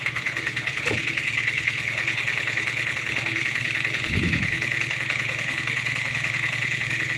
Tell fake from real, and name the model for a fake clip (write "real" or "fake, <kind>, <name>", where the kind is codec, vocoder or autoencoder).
fake, codec, HILCodec